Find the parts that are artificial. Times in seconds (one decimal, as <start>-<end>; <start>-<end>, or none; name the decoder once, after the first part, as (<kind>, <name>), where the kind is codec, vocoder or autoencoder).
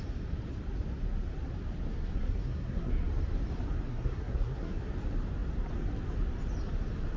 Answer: 1.9-2.9 (codec, SNAC); 3.9-4.9